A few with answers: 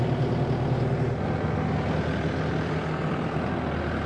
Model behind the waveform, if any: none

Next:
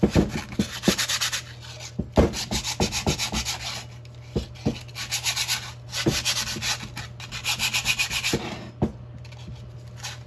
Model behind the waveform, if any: none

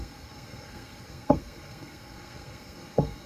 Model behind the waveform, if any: codec, SNAC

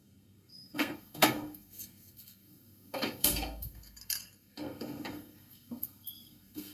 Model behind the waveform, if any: codec, SNAC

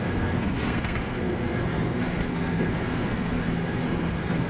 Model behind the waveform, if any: codec, SNAC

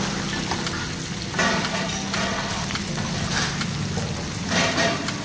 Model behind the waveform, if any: none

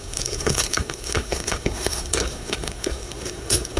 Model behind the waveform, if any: codec, SNAC